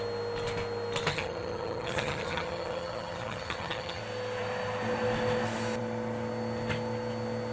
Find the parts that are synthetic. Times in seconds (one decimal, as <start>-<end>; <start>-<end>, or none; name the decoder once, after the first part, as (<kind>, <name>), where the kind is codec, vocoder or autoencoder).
1.1-4.0 (vocoder, HiFi-GAN)